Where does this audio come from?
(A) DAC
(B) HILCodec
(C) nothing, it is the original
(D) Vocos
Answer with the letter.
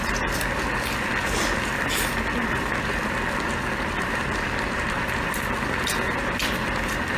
C